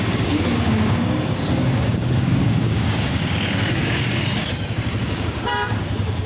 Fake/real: fake